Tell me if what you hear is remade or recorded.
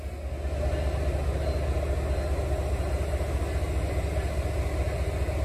recorded